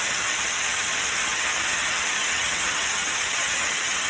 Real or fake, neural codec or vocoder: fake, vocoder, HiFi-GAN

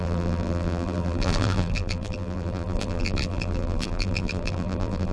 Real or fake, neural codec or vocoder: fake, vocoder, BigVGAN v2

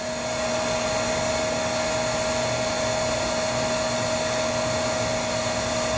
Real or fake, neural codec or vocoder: real